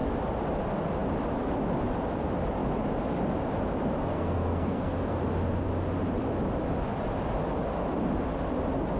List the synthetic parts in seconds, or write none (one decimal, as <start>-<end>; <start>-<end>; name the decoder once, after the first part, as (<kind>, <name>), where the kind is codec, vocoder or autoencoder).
4.1-5.2 (codec, SNAC)